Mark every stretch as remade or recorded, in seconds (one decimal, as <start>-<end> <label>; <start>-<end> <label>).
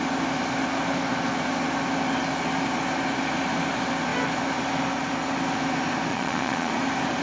0.0-6.1 recorded; 6.1-6.7 remade; 6.7-7.2 recorded